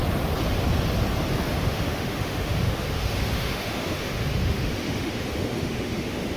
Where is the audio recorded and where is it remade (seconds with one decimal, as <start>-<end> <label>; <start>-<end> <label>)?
0.0-1.6 recorded; 1.6-6.4 remade